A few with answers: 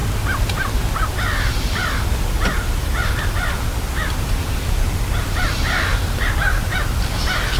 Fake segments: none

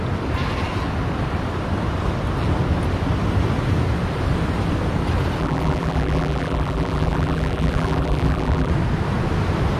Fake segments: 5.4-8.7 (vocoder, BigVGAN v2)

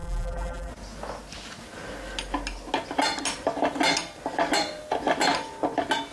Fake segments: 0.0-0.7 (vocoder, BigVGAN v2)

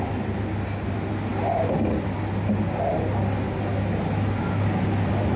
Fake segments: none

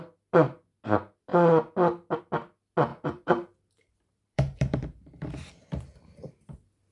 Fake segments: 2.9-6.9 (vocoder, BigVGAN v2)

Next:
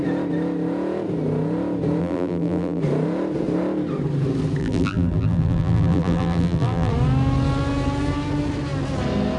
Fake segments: 2.0-2.8 (vocoder, BigVGAN v2); 4.6-6.9

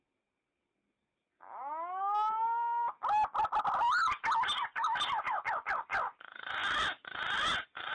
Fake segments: none

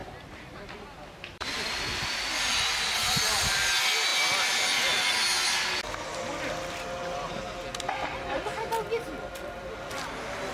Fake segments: 0.0-1.7 (vocoder, BigVGAN v2)